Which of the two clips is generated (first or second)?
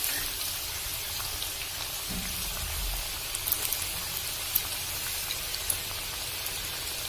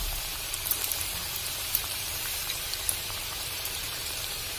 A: second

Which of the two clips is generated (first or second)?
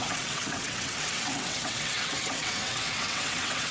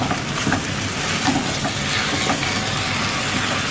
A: first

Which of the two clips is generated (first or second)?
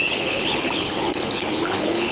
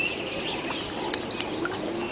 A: first